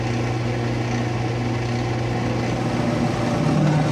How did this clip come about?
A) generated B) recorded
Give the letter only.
B